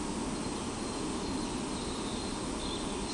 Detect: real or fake real